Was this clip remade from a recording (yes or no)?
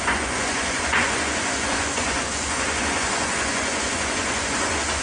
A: yes